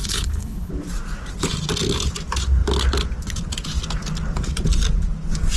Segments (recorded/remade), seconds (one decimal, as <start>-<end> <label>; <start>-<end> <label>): 0.0-0.7 remade; 0.7-5.6 recorded